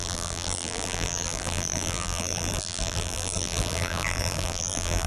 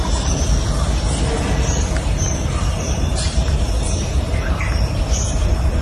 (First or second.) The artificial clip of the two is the first